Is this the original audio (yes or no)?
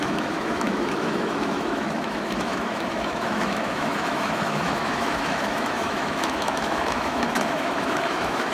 no